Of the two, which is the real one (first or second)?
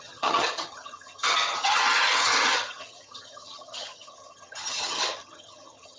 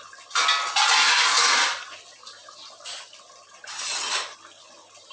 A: second